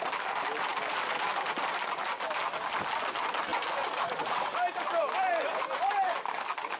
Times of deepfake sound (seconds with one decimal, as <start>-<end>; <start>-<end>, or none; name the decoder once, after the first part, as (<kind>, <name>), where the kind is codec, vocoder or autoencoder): none